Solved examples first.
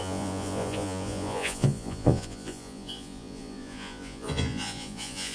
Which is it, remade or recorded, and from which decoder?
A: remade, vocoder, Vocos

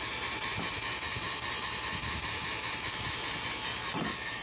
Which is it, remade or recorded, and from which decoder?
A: remade, vocoder, BigVGAN v2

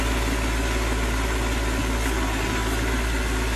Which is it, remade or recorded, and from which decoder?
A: recorded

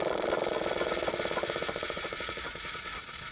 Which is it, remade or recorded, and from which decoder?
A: remade, vocoder, Vocos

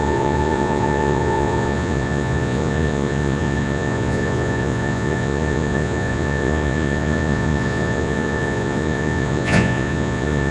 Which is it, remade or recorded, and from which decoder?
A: remade, vocoder, Vocos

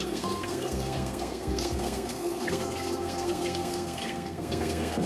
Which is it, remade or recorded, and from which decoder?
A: remade, codec, SNAC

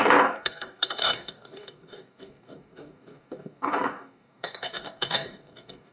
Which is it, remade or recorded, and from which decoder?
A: remade, codec, DAC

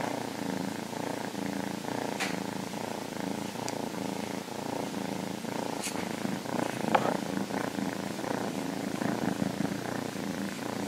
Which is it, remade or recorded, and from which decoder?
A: recorded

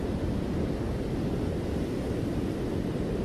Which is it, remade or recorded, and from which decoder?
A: recorded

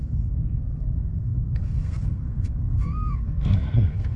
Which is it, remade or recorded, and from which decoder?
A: remade, codec, SNAC